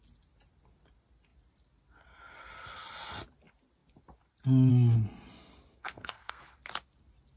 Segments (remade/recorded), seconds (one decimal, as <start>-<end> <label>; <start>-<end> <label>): 0.0-5.8 recorded; 5.8-6.4 remade; 6.4-7.4 recorded